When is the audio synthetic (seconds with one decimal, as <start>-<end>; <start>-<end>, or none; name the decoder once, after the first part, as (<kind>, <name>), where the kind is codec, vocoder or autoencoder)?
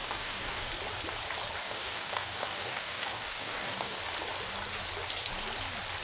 0.0-0.7 (codec, DAC); 1.6-4.0